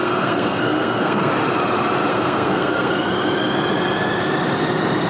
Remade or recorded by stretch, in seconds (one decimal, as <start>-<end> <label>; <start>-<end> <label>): 0.0-1.3 remade; 1.3-2.1 recorded; 2.1-2.9 remade; 2.9-5.1 recorded